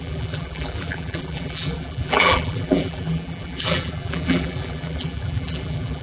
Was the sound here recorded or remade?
remade